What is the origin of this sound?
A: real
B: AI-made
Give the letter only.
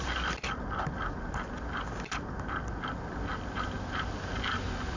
A